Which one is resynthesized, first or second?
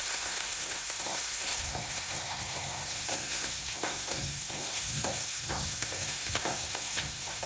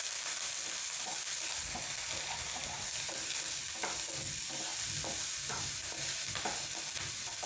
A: first